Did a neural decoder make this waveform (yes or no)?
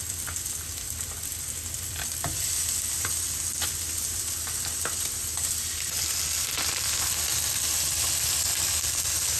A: no